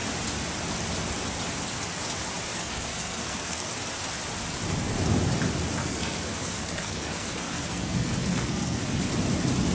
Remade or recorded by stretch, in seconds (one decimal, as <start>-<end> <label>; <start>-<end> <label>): 0.0-2.5 recorded; 2.5-3.7 remade; 3.7-5.8 recorded; 5.8-8.8 remade; 8.8-9.7 recorded